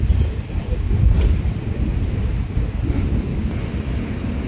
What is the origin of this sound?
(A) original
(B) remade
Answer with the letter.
B